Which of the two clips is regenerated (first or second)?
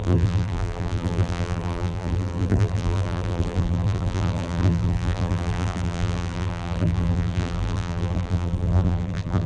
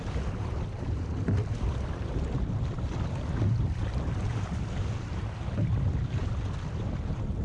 first